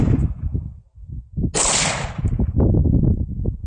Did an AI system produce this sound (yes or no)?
no